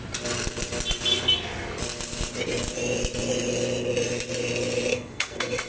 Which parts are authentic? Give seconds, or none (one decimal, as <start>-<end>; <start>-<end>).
0.0-4.9